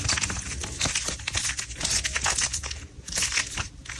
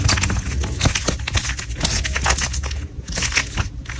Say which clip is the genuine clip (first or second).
second